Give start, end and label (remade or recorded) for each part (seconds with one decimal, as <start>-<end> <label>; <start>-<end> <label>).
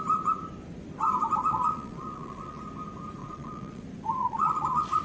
0.0-1.5 recorded; 1.5-2.6 remade; 2.6-3.2 recorded; 3.2-3.8 remade; 3.8-4.2 recorded; 4.2-5.0 remade